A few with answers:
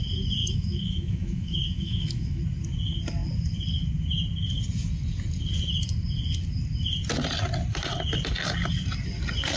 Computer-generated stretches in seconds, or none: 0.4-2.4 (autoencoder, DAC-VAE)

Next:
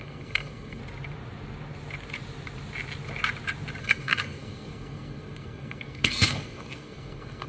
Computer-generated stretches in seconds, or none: 0.0-0.8 (codec, SNAC); 3.8-7.5

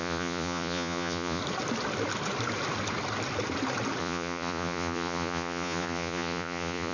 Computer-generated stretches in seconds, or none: 0.0-1.4 (vocoder, Vocos); 4.0-6.9

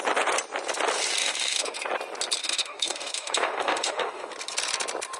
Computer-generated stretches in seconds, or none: 1.2-1.8 (autoencoder, DAC-VAE); 2.4-4.3

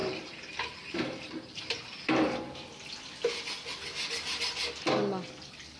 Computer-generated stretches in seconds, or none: 0.0-1.6 (vocoder, BigVGAN v2)

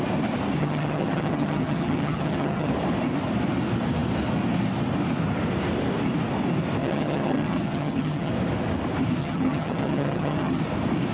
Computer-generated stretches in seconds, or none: 0.6-2.7 (vocoder, HiFi-GAN); 6.8-8.3; 9.2-10.6

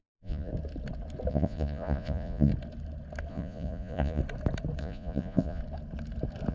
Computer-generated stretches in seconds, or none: 0.0-0.5 (vocoder, Vocos); 1.3-2.5; 3.3-4.2; 4.8-5.6